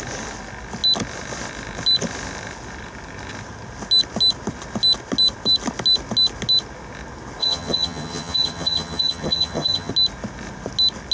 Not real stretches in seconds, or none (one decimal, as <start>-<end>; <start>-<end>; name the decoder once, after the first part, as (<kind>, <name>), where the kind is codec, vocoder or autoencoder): 7.4-9.9 (vocoder, HiFi-GAN)